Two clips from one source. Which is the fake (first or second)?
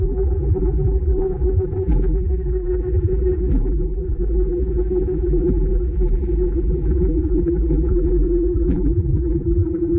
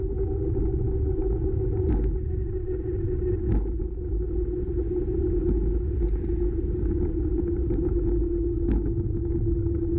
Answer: first